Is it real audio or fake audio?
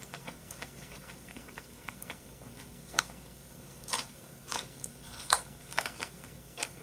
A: fake